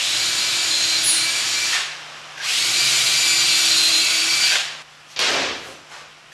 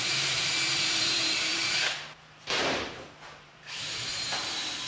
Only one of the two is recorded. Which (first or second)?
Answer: first